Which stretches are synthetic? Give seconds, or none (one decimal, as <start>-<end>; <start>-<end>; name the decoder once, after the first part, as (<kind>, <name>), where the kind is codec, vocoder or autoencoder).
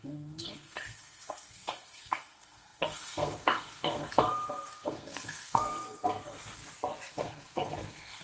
0.0-6.6 (codec, SNAC); 7.1-8.2